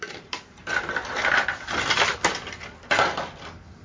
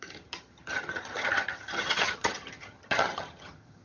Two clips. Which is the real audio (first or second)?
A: first